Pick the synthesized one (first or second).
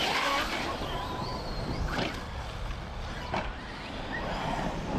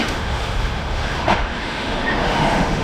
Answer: second